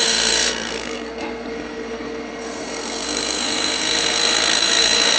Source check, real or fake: fake